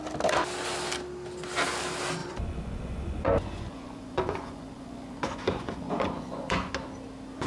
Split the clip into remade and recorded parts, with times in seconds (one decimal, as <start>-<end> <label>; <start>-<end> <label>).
0.0-2.2 recorded; 2.2-6.7 remade; 6.7-7.5 recorded